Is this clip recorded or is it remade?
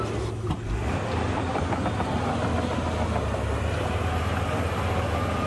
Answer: recorded